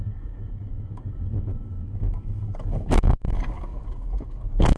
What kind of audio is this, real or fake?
fake